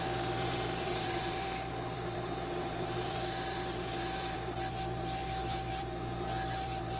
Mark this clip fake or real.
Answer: fake